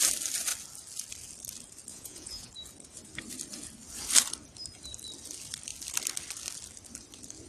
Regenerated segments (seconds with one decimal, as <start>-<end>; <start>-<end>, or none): 1.9-2.5